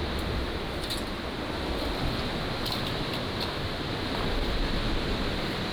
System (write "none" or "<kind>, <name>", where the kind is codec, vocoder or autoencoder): none